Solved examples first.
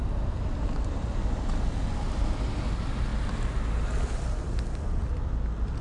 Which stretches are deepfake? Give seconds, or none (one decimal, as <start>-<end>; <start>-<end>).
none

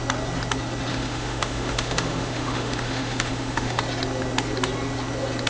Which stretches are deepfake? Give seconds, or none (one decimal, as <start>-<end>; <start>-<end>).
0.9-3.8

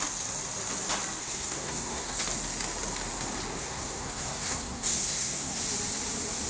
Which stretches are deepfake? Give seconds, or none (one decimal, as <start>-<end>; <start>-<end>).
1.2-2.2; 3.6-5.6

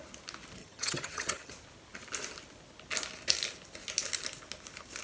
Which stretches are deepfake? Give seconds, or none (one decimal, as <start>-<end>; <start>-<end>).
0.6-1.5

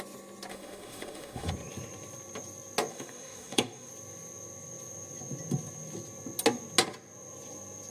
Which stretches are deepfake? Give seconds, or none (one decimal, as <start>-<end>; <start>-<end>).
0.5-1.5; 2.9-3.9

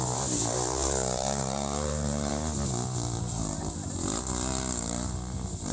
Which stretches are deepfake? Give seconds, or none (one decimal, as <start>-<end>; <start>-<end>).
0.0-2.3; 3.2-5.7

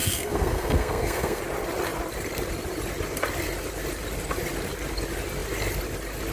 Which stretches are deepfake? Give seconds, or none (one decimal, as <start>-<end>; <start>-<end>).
0.0-1.4

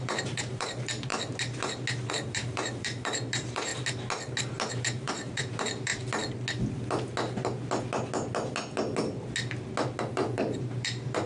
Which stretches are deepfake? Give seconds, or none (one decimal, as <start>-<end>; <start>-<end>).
0.0-1.1; 2.1-3.7; 4.7-5.9; 10.0-11.3